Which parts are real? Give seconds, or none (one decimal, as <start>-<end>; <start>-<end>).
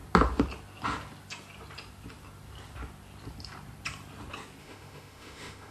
0.0-4.6